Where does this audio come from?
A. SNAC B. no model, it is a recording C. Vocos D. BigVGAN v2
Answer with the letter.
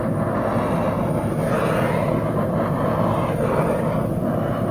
B